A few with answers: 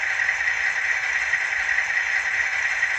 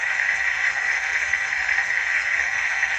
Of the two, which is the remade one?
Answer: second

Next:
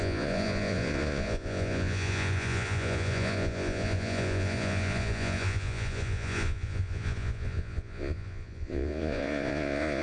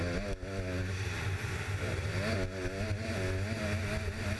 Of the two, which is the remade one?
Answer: first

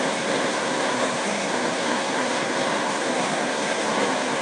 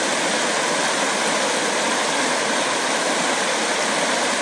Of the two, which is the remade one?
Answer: first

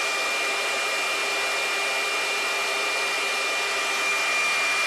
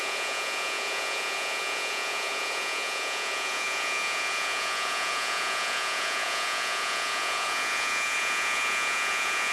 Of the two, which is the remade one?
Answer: second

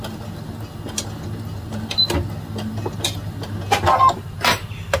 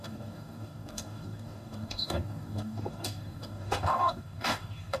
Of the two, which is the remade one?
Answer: second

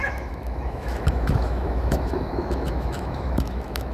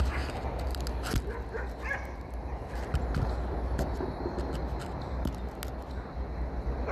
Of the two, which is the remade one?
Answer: first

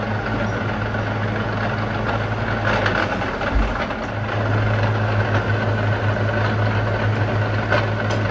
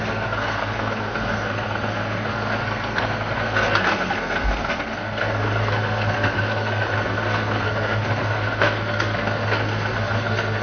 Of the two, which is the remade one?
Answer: second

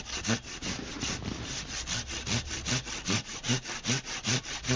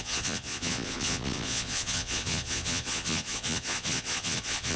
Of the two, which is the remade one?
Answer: second